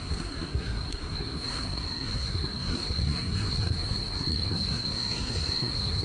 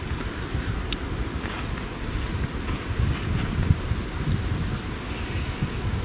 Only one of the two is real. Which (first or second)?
second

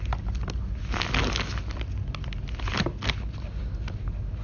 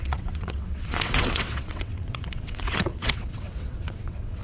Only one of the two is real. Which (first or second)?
first